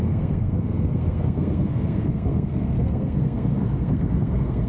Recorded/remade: remade